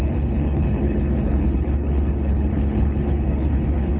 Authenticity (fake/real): fake